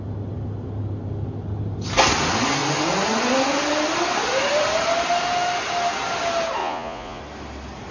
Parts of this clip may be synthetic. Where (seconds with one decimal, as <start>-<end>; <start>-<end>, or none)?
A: 6.6-7.2